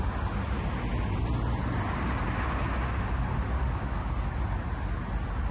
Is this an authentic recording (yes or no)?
yes